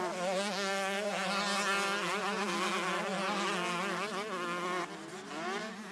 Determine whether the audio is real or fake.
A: real